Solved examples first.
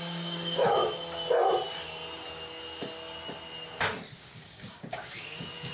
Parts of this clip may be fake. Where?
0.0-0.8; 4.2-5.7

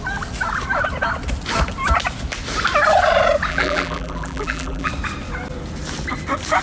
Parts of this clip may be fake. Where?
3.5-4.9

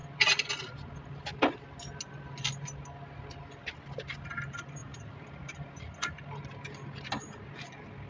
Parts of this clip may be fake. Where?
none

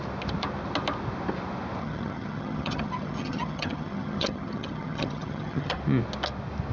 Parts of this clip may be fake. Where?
1.8-5.8